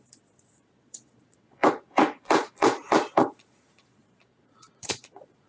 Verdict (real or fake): fake